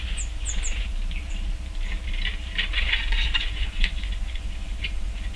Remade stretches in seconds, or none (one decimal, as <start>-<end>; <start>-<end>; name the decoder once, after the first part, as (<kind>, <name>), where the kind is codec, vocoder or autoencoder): 0.0-0.9 (vocoder, Vocos); 2.7-5.4